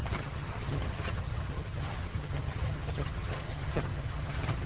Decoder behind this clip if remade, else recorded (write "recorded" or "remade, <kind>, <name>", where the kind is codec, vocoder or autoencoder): remade, vocoder, HiFi-GAN